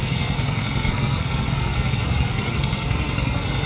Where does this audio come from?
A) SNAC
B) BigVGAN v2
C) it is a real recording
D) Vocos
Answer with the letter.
A